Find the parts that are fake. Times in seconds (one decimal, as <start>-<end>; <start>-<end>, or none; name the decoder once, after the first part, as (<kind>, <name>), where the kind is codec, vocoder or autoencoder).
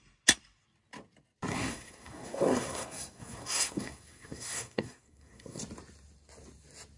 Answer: 1.5-5.6 (codec, SNAC)